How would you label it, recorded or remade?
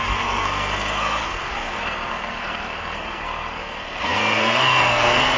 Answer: remade